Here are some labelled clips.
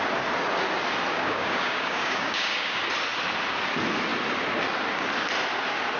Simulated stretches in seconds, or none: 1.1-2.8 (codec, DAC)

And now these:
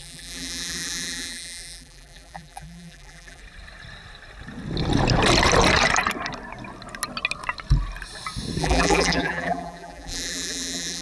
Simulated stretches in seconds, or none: 0.0-3.4 (vocoder, BigVGAN v2); 8.6-11.0

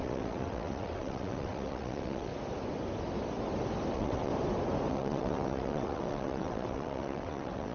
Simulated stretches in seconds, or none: 0.0-2.3 (vocoder, WaveNeXt); 3.9-4.3; 4.9-7.7